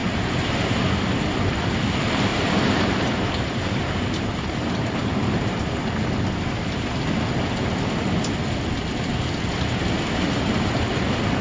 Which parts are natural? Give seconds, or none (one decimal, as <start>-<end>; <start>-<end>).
0.8-2.3; 5.7-11.4